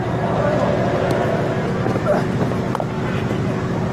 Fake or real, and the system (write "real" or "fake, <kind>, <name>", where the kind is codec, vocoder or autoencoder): real